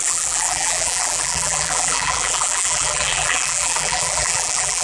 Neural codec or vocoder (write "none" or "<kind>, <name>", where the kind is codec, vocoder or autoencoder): vocoder, BigVGAN v2